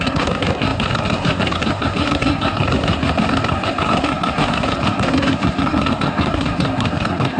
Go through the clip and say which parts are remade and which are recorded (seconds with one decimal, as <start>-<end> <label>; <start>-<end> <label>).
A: 0.0-7.4 remade